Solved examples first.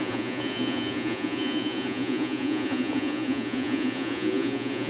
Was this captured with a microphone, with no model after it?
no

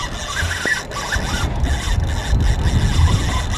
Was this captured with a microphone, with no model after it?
yes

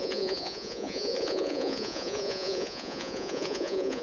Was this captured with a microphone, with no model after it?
no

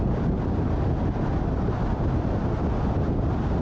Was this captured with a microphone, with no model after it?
yes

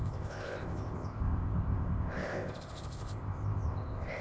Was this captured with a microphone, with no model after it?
no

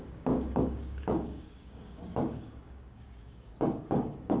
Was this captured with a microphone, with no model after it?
no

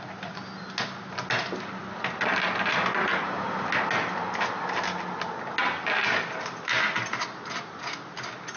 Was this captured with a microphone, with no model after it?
yes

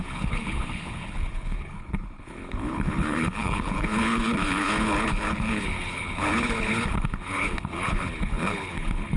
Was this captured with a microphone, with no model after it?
no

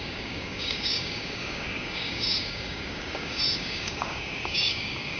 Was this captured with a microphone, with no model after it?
no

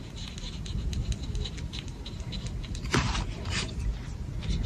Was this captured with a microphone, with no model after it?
yes